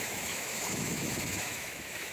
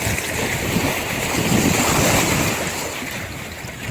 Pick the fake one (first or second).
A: first